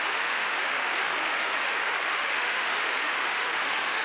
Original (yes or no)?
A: no